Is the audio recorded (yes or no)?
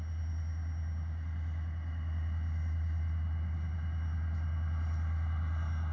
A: yes